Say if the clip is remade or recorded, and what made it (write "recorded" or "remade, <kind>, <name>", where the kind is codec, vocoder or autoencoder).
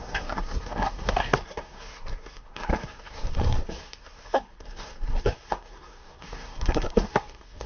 remade, codec, SNAC